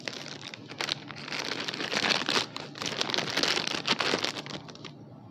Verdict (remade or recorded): recorded